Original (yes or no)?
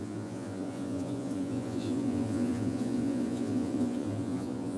no